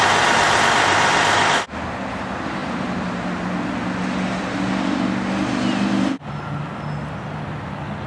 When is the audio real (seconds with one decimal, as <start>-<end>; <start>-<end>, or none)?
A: 0.0-8.1